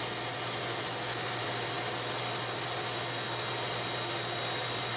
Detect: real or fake real